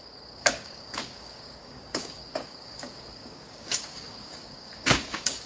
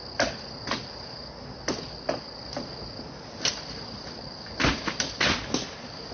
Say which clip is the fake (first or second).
first